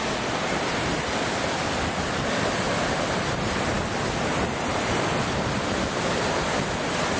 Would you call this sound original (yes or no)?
yes